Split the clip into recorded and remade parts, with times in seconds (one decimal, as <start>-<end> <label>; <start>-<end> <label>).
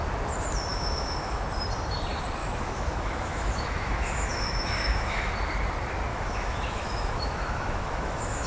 0.0-0.7 recorded; 0.7-1.4 remade; 1.4-2.4 recorded; 2.4-5.3 remade; 5.3-6.1 recorded; 6.1-8.5 remade